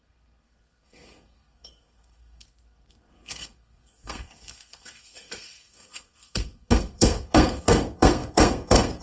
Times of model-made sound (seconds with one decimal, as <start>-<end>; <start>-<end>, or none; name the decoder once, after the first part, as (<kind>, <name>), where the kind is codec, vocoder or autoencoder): 0.0-9.0 (codec, SNAC)